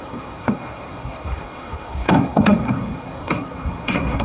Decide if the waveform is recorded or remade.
remade